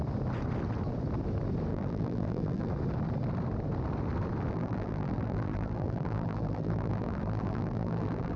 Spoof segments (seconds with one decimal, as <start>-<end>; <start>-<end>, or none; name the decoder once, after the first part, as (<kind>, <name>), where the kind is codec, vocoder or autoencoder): 1.7-2.7 (vocoder, BigVGAN v2); 4.5-8.4